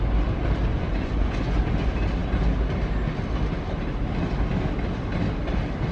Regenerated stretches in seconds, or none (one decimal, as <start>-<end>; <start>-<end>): 0.7-1.6